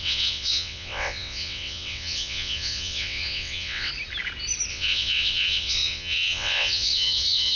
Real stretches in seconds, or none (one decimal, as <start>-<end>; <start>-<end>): 3.9-4.7